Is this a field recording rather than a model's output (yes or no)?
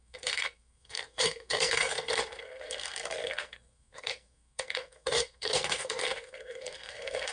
no